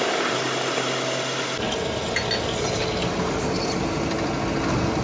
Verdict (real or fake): real